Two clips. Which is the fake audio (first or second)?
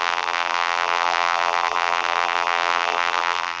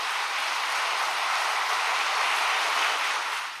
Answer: first